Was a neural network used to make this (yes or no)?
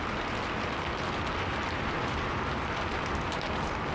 no